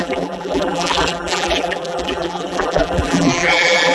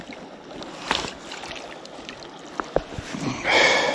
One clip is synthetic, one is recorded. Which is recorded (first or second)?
second